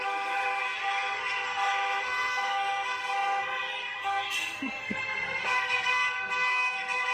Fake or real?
fake